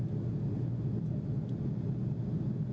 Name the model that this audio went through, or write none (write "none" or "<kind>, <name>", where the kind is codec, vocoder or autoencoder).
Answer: none